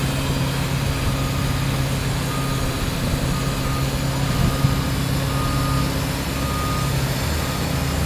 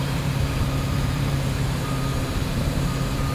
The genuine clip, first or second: first